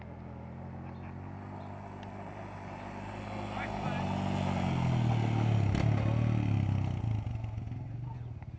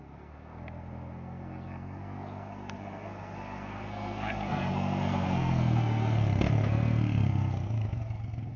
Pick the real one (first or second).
first